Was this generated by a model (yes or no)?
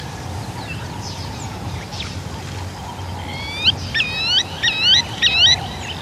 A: no